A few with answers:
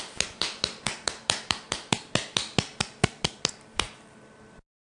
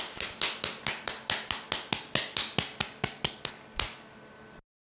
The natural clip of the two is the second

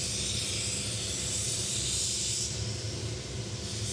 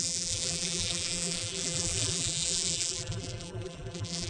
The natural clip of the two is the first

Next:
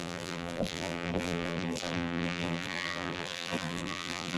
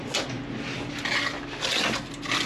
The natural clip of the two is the second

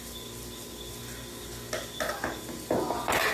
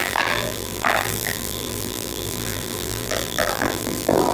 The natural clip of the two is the first